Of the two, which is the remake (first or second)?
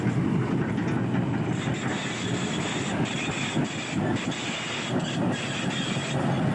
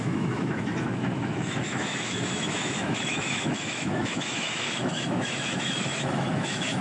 second